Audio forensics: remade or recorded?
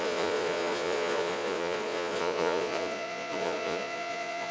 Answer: remade